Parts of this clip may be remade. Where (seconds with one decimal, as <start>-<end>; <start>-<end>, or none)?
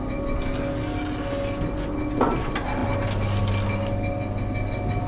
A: none